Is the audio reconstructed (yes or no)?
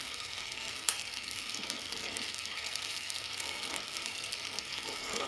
yes